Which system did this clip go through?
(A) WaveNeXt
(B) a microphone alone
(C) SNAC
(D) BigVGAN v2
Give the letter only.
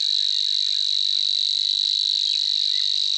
B